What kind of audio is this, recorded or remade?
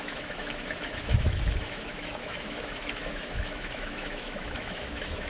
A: remade